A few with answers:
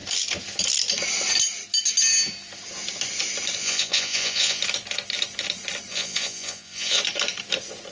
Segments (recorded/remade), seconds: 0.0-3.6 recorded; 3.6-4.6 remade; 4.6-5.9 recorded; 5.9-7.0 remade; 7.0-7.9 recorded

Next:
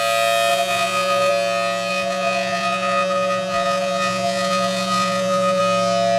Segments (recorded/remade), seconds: 0.0-0.5 recorded; 0.5-1.3 remade; 1.3-1.9 recorded; 1.9-5.6 remade; 5.6-6.2 recorded

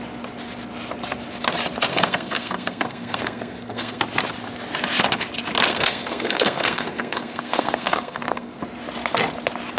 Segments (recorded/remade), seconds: 0.0-1.9 recorded; 1.9-4.0 remade; 4.0-5.7 recorded; 5.7-8.6 remade; 8.6-9.8 recorded

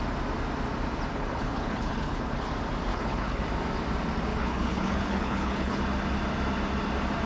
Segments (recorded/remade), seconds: 0.0-1.1 recorded; 1.1-2.5 remade; 2.5-2.9 recorded; 2.9-3.4 remade; 3.4-4.3 recorded; 4.3-5.8 remade; 5.8-7.3 recorded

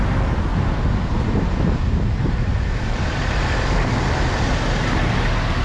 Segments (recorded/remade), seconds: 0.0-0.5 recorded; 0.5-3.9 remade; 3.9-5.6 recorded

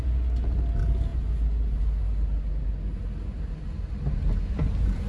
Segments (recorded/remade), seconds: 0.0-5.1 recorded